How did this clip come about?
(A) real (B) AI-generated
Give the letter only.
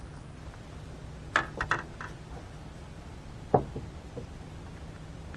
A